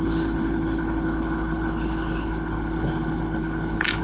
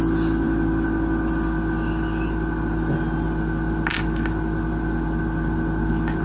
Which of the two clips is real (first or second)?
second